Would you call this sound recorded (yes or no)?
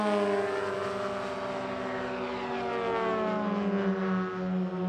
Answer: yes